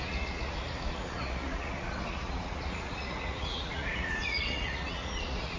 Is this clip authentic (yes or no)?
no